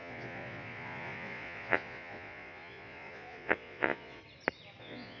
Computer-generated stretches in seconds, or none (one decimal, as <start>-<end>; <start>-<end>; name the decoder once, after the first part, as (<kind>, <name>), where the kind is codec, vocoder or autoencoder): 0.0-4.2 (vocoder, Vocos); 4.8-5.2